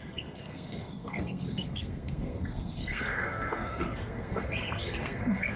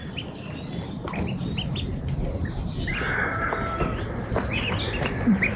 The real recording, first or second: second